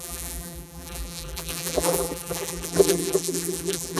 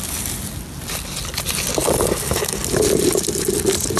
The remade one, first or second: first